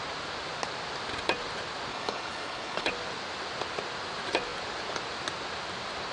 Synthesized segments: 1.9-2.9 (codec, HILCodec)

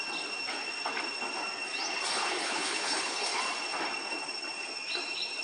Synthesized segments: 2.1-3.4 (codec, HILCodec)

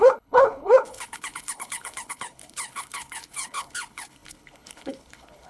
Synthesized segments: 0.0-5.5 (codec, HILCodec)